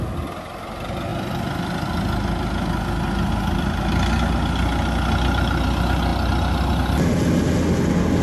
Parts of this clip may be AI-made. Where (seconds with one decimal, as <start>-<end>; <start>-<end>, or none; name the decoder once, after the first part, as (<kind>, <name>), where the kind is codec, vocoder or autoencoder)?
none